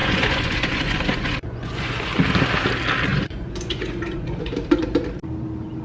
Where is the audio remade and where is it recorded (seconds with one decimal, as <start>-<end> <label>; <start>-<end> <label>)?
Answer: 0.0-1.9 remade; 1.9-3.1 recorded; 3.1-4.5 remade; 4.5-5.8 recorded